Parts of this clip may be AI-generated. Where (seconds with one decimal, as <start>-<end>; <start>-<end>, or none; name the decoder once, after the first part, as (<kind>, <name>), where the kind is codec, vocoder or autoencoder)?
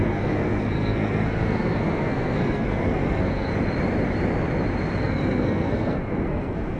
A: 0.0-3.5 (codec, SNAC); 5.0-6.8